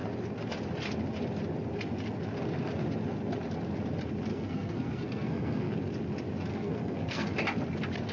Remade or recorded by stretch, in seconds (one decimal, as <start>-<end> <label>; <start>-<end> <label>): 0.0-4.3 recorded; 4.3-5.7 remade; 5.7-6.5 recorded; 6.5-7.3 remade; 7.3-8.1 recorded